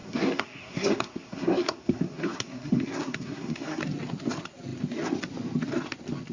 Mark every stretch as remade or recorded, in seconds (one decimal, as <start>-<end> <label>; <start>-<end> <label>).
0.0-3.8 remade; 3.8-6.3 recorded